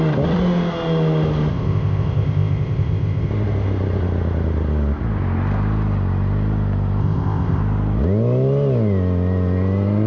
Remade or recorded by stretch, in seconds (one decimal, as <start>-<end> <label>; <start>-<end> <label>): 0.0-1.5 recorded; 1.5-3.3 remade; 3.3-7.0 recorded; 7.0-7.6 remade; 7.6-10.1 recorded